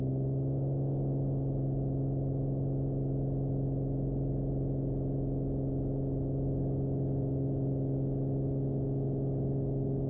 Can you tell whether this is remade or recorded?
recorded